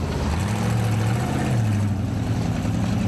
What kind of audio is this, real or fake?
real